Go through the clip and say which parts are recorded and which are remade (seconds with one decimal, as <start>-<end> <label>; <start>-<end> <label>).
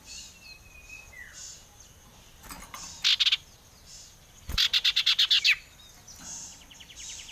0.0-7.3 recorded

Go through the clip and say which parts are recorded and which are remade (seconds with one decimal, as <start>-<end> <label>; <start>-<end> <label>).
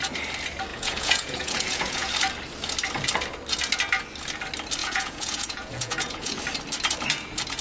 0.0-0.7 recorded; 0.7-2.1 remade; 2.1-4.8 recorded; 4.8-6.4 remade; 6.4-7.6 recorded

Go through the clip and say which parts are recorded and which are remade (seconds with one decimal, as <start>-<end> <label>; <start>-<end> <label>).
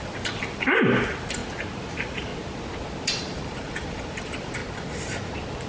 0.0-1.4 remade; 1.4-1.9 recorded; 1.9-2.3 remade; 2.3-3.2 recorded; 3.2-4.6 remade; 4.6-5.7 recorded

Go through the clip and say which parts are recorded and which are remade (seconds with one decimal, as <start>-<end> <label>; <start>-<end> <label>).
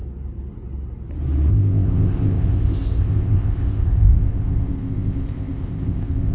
0.0-1.5 recorded; 1.5-6.3 remade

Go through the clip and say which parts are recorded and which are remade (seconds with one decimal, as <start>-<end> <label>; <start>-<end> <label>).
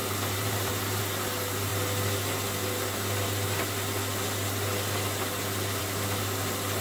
0.0-1.0 remade; 1.0-6.8 recorded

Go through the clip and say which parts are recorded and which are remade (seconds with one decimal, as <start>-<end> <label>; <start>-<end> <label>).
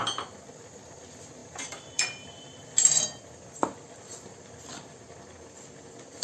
0.0-1.4 recorded; 1.4-2.7 remade; 2.7-6.2 recorded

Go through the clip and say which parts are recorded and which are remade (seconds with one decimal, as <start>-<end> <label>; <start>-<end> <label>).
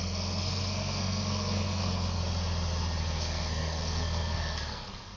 0.0-2.2 remade; 2.2-3.0 recorded; 3.0-5.2 remade